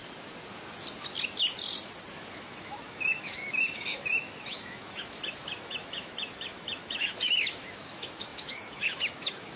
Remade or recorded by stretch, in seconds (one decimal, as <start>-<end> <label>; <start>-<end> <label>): 0.0-2.3 recorded; 2.3-9.6 remade

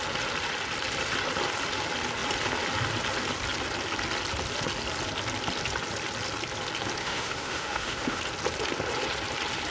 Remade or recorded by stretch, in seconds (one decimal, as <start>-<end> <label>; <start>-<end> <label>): 0.0-7.0 recorded; 7.0-8.2 remade; 8.2-9.7 recorded

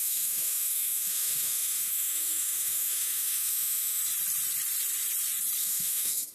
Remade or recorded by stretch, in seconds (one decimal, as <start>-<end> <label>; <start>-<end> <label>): 0.0-4.0 remade; 4.0-5.6 recorded; 5.6-6.3 remade

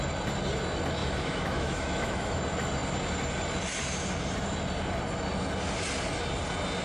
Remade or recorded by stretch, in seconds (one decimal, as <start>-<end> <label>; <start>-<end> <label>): 0.0-1.0 recorded; 1.0-2.4 remade; 2.4-6.8 recorded

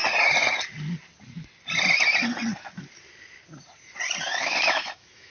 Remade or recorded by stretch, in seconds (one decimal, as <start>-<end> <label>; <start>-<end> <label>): 0.0-4.4 recorded; 4.4-5.3 remade

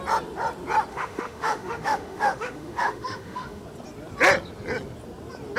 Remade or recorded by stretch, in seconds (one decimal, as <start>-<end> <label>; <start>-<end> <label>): 0.0-0.9 recorded; 0.9-3.6 remade; 3.6-5.6 recorded

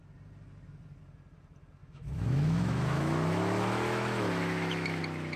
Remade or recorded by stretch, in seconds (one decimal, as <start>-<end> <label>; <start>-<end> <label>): 0.0-1.8 recorded; 1.8-5.0 remade; 5.0-5.4 recorded

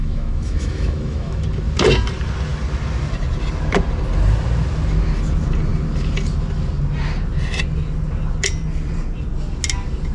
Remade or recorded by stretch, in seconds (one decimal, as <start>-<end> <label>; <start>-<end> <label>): 0.0-1.4 remade; 1.4-10.1 recorded